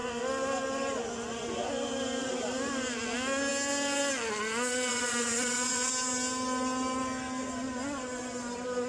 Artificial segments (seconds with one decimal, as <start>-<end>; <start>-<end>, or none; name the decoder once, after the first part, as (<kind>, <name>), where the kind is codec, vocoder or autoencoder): 4.9-5.9 (vocoder, Vocos)